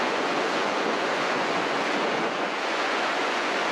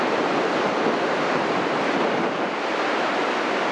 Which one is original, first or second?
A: second